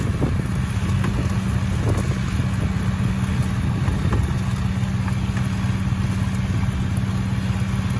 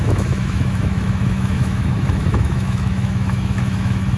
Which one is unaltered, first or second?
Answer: first